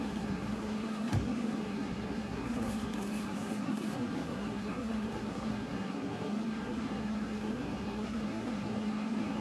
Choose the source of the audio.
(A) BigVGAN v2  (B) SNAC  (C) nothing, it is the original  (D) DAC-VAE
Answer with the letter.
B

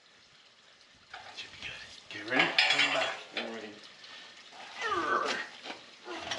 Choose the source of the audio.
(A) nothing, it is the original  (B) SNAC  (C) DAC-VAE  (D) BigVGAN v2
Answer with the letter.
A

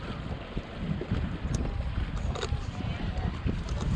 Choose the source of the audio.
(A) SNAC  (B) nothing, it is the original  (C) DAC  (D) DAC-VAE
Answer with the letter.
B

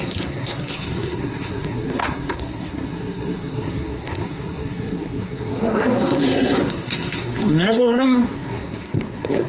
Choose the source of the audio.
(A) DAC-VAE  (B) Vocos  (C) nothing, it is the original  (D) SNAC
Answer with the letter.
D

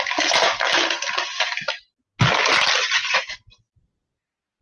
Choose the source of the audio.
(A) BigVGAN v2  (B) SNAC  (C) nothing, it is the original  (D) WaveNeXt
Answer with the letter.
C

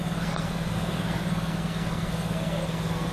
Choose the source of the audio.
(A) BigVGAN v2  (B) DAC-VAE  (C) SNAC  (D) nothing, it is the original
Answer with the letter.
C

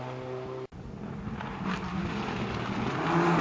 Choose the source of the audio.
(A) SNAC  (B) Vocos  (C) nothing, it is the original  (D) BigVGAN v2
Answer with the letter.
C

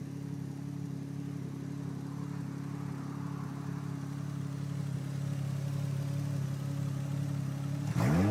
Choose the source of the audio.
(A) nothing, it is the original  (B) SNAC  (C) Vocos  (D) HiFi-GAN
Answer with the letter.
A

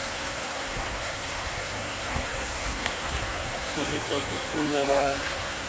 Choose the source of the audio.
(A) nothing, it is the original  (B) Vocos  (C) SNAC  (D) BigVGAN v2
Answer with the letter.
C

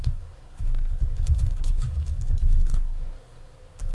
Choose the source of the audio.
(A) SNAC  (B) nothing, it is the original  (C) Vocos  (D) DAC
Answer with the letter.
A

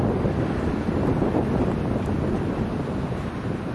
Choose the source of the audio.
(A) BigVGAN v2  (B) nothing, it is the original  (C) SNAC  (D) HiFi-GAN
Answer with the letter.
B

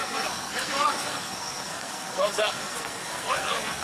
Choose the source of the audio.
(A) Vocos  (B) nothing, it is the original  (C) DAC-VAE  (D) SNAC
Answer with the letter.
D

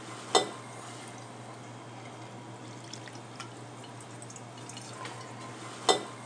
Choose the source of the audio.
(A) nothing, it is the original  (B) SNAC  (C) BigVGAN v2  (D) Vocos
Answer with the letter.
A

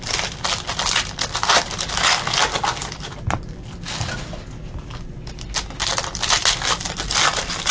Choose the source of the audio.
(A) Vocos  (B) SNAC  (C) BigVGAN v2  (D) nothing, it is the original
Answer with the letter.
D